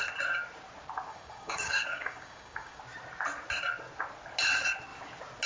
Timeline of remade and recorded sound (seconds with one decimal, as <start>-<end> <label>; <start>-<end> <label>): 0.0-1.1 recorded; 1.1-2.8 remade; 2.8-5.5 recorded